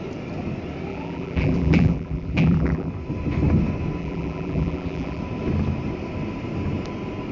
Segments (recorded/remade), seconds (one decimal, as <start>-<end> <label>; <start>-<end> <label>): 0.0-0.9 recorded; 0.9-2.9 remade; 2.9-4.0 recorded; 4.0-5.2 remade; 5.2-7.3 recorded